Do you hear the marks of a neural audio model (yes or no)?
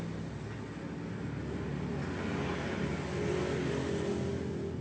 no